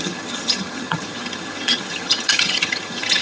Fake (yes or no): yes